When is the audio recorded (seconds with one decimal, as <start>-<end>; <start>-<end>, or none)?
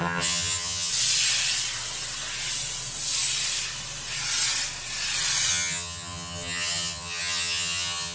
0.9-5.5